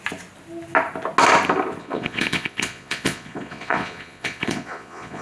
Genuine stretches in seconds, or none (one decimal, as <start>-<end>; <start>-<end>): 0.0-1.8